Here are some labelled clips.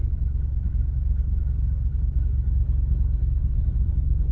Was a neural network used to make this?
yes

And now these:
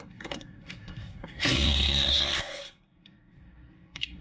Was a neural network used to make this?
yes